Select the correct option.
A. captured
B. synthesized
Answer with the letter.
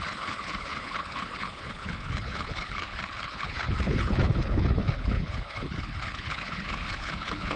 B